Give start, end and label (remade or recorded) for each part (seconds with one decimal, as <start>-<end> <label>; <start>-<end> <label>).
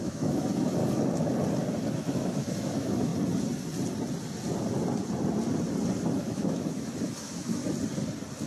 0.0-0.8 remade; 0.8-2.1 recorded; 2.1-3.1 remade; 3.1-6.2 recorded; 6.2-7.6 remade; 7.6-8.5 recorded